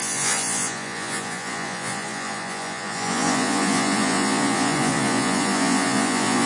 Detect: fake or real fake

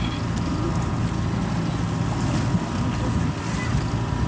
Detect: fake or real real